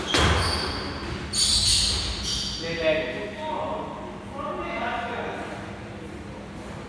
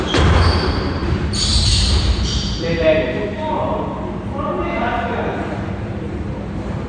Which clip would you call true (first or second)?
first